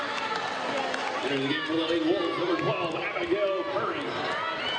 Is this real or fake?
real